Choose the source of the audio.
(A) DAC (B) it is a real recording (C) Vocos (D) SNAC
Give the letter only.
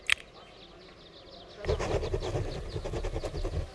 B